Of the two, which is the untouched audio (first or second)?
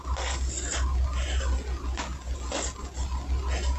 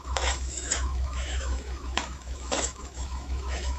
first